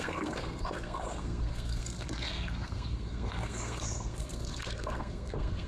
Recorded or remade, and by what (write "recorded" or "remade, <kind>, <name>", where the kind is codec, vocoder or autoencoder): remade, codec, SNAC